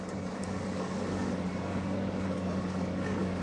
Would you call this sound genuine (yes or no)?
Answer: no